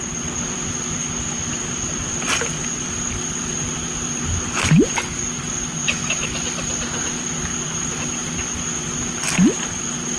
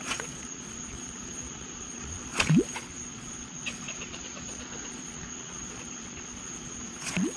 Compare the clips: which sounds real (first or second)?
first